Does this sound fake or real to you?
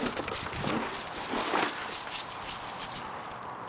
real